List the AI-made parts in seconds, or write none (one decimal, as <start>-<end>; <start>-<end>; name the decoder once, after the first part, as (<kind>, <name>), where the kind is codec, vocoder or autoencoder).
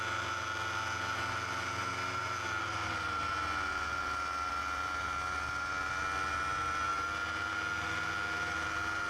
none